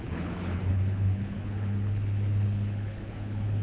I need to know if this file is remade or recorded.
remade